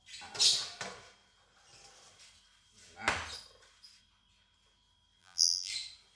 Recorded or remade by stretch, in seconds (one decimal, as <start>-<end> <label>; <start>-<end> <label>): 0.0-5.2 recorded; 5.2-5.7 remade; 5.7-6.2 recorded